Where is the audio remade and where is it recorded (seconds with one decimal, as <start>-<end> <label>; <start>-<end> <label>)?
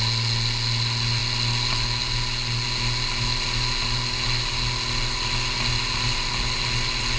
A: 0.0-7.2 recorded